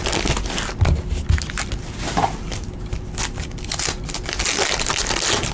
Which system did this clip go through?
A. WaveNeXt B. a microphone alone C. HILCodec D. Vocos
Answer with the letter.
B